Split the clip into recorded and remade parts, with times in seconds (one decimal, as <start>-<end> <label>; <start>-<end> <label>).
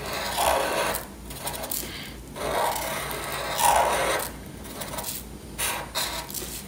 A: 0.0-6.7 recorded